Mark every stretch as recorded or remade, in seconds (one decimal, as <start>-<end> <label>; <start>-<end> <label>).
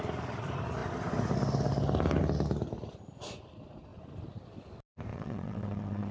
0.0-5.1 recorded; 5.1-6.1 remade